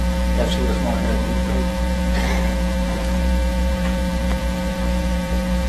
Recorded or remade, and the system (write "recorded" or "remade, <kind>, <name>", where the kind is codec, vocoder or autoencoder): remade, vocoder, BigVGAN v2